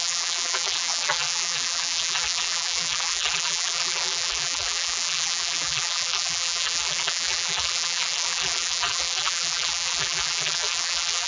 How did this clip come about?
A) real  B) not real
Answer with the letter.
B